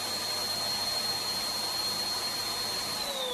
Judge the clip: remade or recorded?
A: recorded